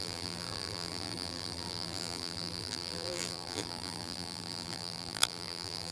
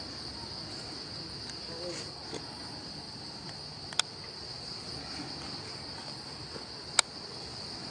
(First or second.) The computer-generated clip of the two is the first